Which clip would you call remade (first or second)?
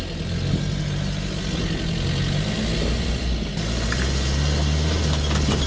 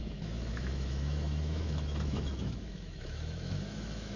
second